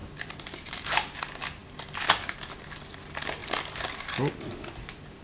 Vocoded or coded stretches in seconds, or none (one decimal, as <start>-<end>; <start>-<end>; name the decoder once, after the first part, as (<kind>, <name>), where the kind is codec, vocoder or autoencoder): 0.0-0.7 (vocoder, BigVGAN v2)